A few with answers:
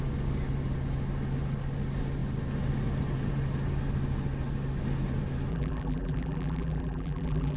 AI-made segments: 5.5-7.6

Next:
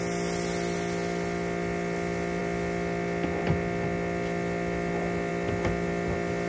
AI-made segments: none